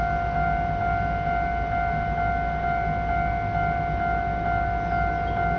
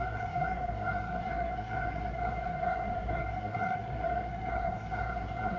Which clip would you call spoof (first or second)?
second